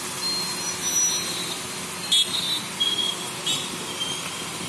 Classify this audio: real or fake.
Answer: real